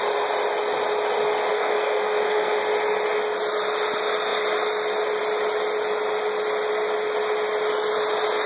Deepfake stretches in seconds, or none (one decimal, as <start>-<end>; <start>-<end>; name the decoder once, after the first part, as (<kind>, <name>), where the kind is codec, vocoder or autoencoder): 1.5-2.6 (codec, SNAC)